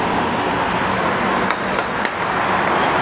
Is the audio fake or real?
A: real